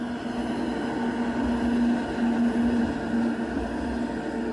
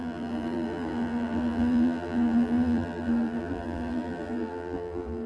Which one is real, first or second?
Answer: first